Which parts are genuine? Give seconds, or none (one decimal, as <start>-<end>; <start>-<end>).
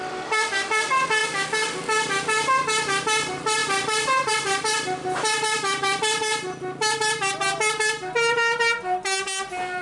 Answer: 0.0-9.8